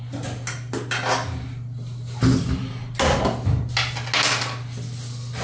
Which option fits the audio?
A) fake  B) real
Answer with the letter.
B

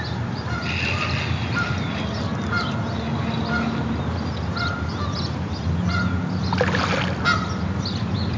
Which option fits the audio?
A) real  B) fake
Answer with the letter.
A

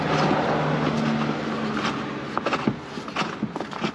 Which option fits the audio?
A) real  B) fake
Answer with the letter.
A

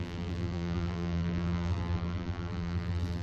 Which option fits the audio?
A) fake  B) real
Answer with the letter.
A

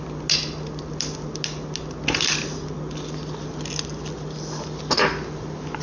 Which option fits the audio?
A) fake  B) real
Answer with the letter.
B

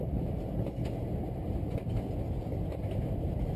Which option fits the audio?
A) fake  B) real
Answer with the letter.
B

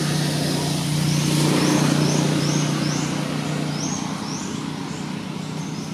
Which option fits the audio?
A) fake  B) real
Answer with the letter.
B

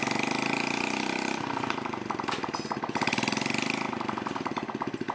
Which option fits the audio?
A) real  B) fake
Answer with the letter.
A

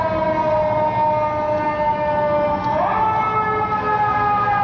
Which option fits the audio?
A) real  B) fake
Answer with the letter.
A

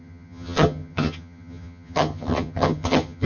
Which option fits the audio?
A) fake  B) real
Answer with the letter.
A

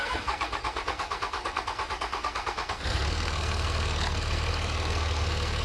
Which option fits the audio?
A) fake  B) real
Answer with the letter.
A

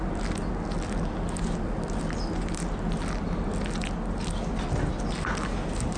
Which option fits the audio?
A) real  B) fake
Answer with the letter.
A